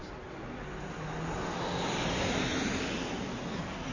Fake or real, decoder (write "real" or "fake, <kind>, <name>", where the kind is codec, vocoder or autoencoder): real